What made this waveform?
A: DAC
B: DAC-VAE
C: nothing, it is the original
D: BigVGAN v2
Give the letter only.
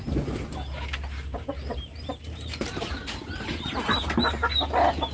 C